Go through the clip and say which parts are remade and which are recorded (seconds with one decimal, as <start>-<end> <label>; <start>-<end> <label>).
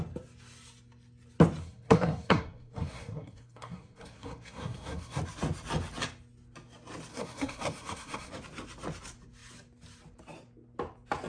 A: 0.0-1.6 recorded; 1.6-5.2 remade; 5.2-7.1 recorded; 7.1-8.3 remade; 8.3-11.3 recorded